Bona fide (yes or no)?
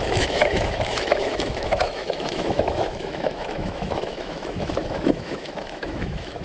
no